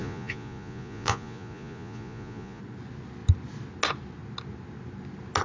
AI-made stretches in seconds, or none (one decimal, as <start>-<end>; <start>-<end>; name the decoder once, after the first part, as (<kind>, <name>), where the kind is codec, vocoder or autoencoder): 0.0-2.6 (vocoder, Vocos)